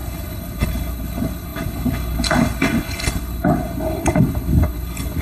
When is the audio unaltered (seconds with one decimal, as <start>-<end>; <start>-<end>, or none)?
none

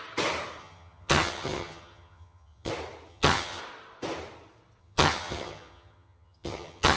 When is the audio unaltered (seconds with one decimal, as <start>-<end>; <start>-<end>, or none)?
0.0-0.6; 2.7-3.1; 3.6-4.8

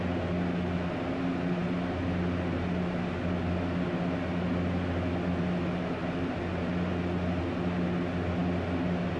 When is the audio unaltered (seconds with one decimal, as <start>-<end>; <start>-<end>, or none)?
0.0-9.2